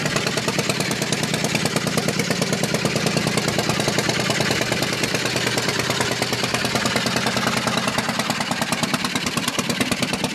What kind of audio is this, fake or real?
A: real